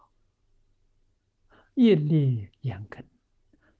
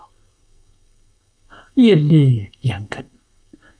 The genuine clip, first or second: first